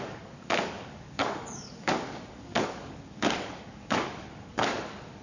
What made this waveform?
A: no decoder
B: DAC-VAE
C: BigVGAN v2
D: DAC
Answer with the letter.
D